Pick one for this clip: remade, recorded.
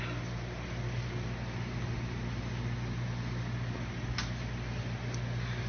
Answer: recorded